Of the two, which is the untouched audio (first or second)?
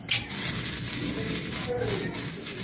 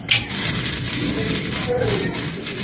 first